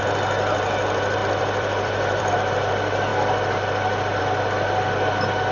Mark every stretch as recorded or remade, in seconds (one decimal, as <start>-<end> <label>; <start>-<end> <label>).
0.0-1.2 recorded; 1.2-2.3 remade; 2.3-5.5 recorded